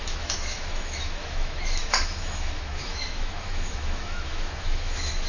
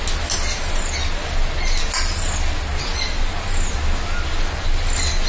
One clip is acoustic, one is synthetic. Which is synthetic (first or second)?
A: first